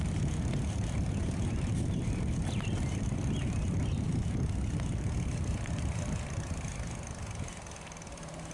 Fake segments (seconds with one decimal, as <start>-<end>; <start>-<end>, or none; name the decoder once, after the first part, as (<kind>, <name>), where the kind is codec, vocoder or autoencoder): 1.2-2.2 (vocoder, BigVGAN v2)